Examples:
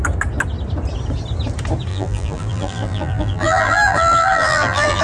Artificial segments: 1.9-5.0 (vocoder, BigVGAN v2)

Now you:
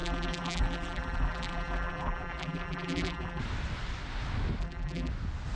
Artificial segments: 0.0-3.4 (vocoder, BigVGAN v2); 4.6-5.1

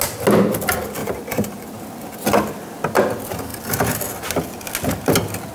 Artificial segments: 1.0-1.7 (vocoder, BigVGAN v2)

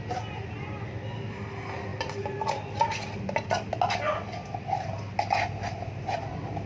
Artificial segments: none

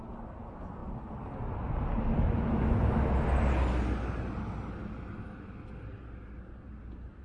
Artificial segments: none

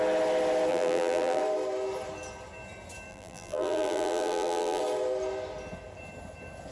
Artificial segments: 0.7-1.4 (vocoder, BigVGAN v2); 3.1-4.8

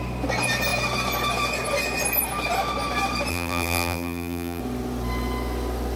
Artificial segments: 3.3-4.6 (vocoder, BigVGAN v2)